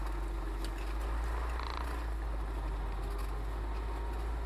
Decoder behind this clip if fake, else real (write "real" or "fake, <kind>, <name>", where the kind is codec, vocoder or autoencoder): real